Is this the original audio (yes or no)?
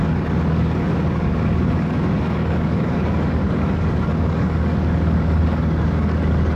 no